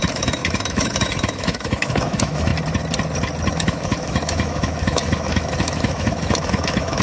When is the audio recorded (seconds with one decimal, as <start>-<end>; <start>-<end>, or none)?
2.5-3.5